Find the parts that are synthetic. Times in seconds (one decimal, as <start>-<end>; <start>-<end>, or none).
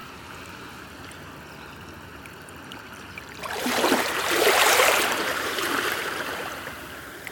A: 0.0-0.9; 2.1-6.5